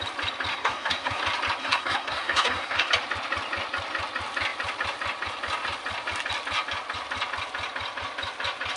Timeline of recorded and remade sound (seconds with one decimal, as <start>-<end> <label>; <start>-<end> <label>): 0.0-0.5 recorded; 0.5-1.2 remade; 1.2-1.6 recorded; 1.6-2.9 remade; 2.9-8.8 recorded